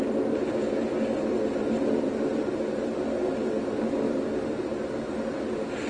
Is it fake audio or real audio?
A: real